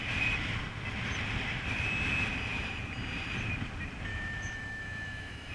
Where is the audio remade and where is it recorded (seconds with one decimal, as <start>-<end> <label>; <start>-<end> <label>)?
0.0-4.1 recorded; 4.1-5.5 remade